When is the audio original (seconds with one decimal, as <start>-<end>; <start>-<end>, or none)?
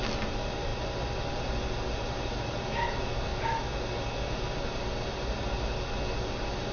0.0-6.7